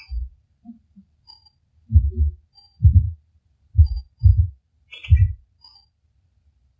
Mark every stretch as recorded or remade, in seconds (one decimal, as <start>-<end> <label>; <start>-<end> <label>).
0.0-6.8 recorded